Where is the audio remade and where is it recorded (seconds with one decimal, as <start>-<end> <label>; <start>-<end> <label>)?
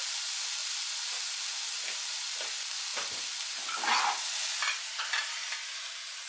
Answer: 0.0-6.3 recorded